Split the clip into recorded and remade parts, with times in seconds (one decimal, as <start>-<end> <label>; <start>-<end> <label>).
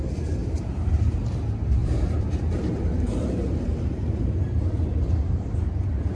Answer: 0.0-0.4 recorded; 0.4-1.3 remade; 1.3-1.8 recorded; 1.8-5.5 remade; 5.5-6.1 recorded